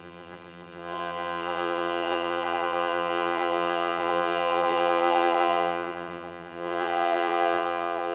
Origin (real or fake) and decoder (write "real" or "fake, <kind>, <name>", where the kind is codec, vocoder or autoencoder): fake, vocoder, BigVGAN v2